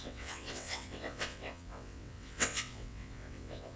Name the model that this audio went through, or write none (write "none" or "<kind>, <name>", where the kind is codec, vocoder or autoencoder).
vocoder, WaveNeXt